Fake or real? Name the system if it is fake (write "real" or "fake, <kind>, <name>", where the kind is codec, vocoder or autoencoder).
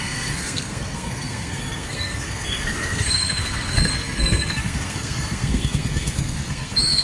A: fake, codec, SNAC